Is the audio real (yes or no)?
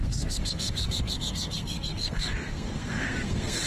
no